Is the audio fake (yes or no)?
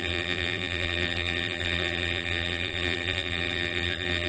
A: yes